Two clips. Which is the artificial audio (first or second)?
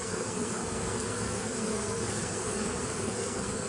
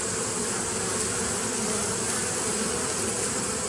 first